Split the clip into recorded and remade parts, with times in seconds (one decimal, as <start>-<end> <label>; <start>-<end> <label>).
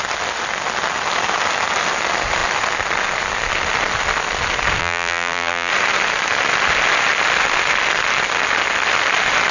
0.0-4.8 recorded; 4.8-5.7 remade; 5.7-9.5 recorded